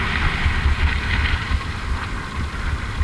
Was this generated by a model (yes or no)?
no